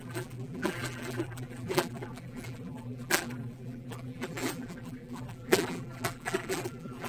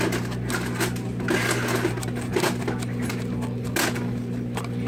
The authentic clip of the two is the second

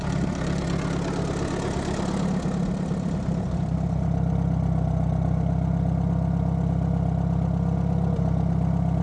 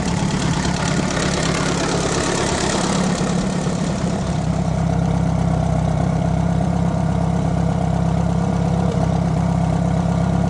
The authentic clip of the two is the first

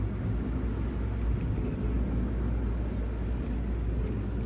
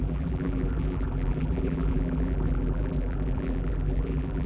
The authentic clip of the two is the first